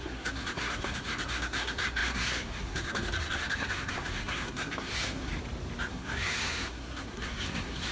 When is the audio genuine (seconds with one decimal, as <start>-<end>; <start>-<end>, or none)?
5.3-5.9